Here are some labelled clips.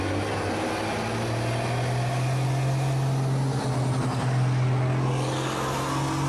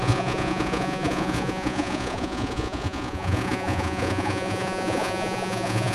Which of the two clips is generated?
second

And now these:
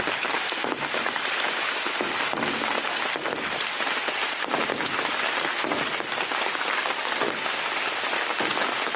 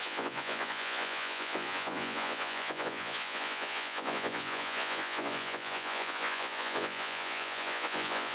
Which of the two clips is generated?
second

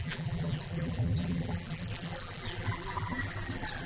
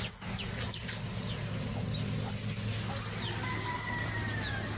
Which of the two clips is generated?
first